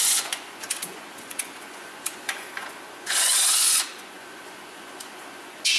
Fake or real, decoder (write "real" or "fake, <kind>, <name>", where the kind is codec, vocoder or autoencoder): fake, vocoder, Vocos